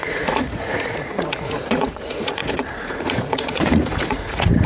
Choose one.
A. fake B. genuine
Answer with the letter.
A